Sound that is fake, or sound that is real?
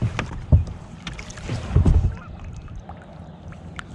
real